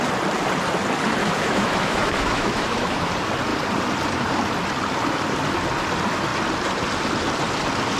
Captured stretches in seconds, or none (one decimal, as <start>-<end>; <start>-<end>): 0.0-1.2; 3.1-8.0

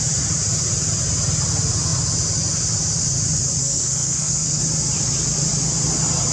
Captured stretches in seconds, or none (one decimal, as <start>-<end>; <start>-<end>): 0.0-3.6; 4.6-6.3

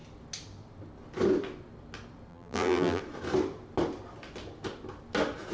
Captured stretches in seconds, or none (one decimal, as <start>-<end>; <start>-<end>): 0.0-2.3; 3.0-5.5

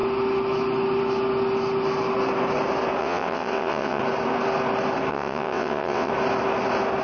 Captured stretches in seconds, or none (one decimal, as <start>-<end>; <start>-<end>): 0.0-3.0; 4.0-5.1; 6.1-7.0